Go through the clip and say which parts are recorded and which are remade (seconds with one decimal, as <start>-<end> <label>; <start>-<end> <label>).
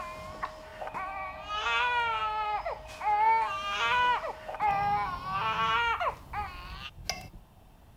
0.0-8.0 recorded